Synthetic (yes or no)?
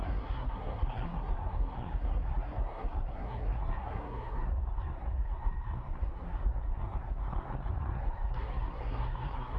yes